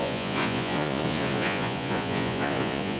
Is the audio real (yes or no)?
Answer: no